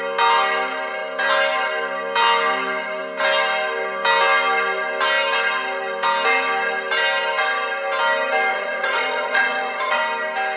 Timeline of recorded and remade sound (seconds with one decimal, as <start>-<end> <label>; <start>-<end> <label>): 0.0-8.5 recorded; 8.5-10.0 remade; 10.0-10.6 recorded